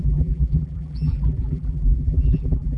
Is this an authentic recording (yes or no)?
no